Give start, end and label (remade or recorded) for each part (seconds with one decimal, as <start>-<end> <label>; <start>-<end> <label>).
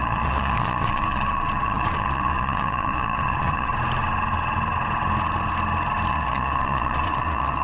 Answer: 0.0-3.7 remade; 3.7-6.1 recorded; 6.1-7.6 remade